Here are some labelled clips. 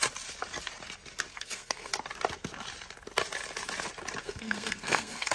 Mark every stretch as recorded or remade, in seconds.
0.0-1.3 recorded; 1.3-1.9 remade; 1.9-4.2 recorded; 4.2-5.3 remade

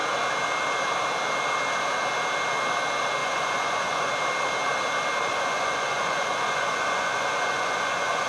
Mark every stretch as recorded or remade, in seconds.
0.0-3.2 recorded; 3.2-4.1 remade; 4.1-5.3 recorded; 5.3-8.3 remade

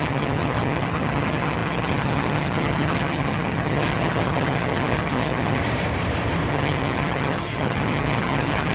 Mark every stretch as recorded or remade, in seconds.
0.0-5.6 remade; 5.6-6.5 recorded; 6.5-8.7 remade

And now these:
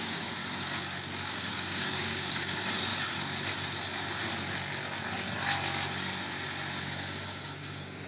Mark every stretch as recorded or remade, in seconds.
0.0-0.4 remade; 0.4-1.2 recorded; 1.2-2.9 remade; 2.9-6.8 recorded; 6.8-8.1 remade

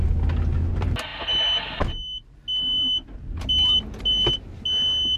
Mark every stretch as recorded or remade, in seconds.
0.0-5.2 recorded